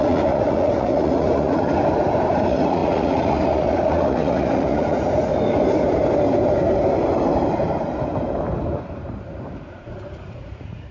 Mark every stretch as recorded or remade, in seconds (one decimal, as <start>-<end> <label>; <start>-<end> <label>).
0.0-1.7 remade; 1.7-2.3 recorded; 2.3-5.3 remade; 5.3-9.7 recorded; 9.7-10.9 remade